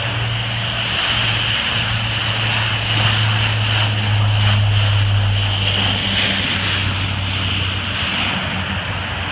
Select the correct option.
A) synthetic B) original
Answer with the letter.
B